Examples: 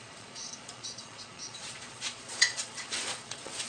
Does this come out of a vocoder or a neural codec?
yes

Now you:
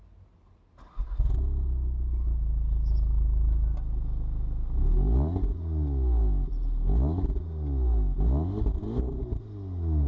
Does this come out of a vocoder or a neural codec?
no